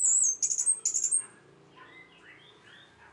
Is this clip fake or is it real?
real